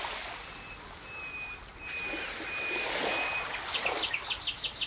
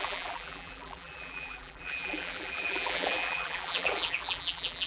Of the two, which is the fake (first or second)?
second